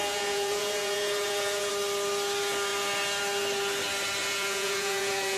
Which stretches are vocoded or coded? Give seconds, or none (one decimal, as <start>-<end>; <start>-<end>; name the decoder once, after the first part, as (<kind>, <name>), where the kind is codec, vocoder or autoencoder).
0.0-1.7 (vocoder, Vocos); 4.2-5.4